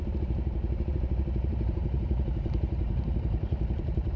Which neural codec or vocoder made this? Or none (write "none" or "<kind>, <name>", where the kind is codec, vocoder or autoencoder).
vocoder, BigVGAN v2